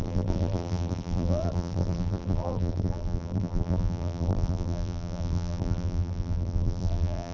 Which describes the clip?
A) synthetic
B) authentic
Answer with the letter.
A